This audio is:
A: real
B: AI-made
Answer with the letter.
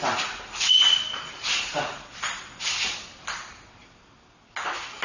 A